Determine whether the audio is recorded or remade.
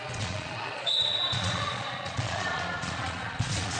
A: remade